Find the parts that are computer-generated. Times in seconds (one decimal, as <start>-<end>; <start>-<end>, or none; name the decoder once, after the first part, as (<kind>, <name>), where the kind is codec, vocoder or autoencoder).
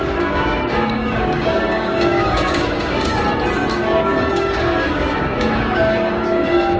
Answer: 0.0-3.2 (codec, DAC); 3.8-6.8